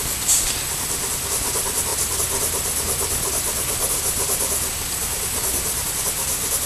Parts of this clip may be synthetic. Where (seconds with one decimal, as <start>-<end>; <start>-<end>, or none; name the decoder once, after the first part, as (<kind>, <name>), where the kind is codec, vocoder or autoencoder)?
none